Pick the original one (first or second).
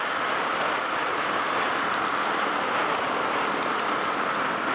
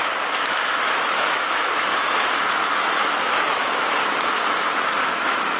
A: first